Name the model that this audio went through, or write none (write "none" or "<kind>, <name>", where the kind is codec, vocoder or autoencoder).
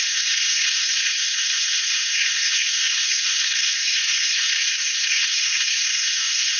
codec, SNAC